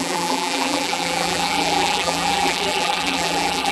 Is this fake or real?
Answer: fake